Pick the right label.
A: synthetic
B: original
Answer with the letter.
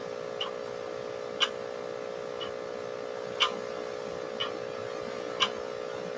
B